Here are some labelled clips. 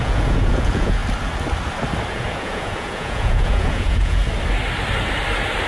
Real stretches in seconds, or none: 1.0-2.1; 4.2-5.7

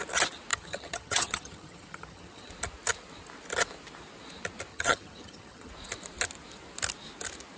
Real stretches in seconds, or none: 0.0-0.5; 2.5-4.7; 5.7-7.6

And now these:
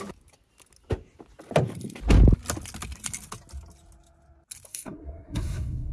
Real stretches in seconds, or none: 0.0-4.7

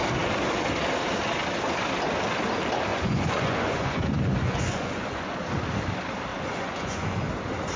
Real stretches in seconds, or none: 0.0-2.9; 5.4-6.3; 7.3-7.8

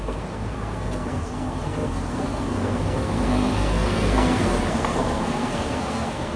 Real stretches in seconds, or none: none

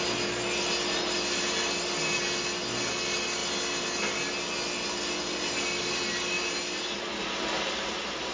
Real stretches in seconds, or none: 0.0-8.3

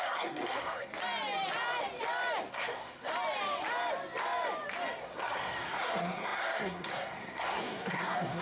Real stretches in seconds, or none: 0.9-2.5; 3.1-5.0

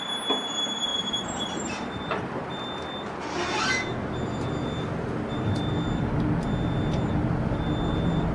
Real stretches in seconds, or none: 0.0-0.9; 2.1-5.3; 6.1-8.3